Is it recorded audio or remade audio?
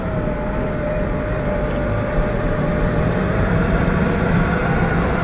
recorded